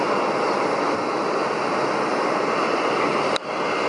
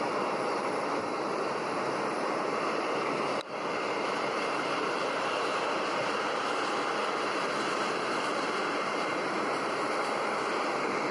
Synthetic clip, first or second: second